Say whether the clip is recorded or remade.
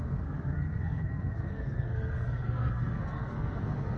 remade